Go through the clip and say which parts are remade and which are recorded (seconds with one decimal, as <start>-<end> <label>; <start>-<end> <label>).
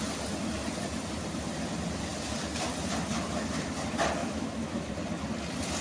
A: 0.0-4.2 recorded; 4.2-4.9 remade; 4.9-5.8 recorded